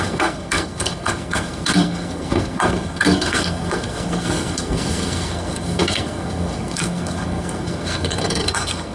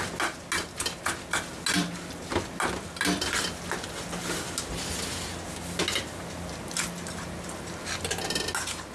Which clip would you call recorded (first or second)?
second